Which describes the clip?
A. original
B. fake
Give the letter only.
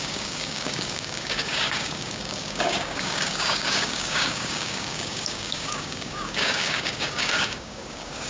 B